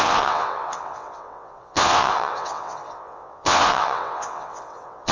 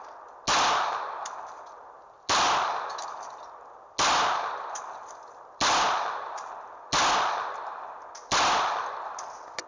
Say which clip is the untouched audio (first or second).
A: second